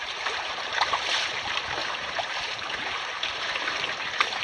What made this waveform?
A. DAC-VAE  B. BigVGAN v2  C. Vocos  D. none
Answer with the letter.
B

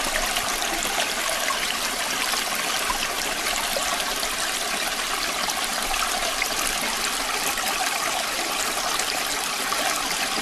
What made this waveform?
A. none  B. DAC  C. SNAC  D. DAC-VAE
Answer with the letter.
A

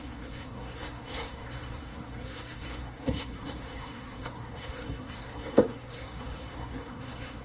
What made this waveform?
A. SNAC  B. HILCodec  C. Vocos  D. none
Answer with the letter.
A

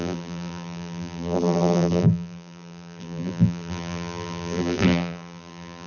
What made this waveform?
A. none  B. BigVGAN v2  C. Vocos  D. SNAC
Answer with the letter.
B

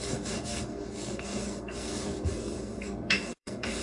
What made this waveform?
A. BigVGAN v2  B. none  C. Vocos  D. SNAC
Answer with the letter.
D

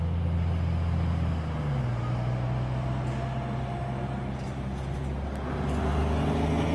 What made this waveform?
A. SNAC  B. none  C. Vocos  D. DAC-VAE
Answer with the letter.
B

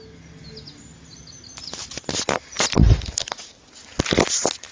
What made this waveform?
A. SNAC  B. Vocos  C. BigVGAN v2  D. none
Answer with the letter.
D